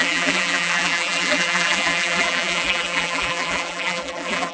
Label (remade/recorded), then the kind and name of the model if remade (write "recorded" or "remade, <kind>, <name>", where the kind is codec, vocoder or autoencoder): remade, vocoder, BigVGAN v2